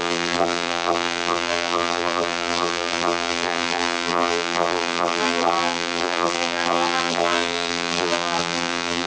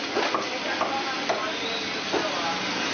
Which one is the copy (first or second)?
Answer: first